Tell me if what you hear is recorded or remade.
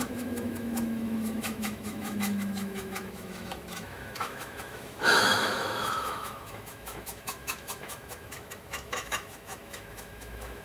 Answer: remade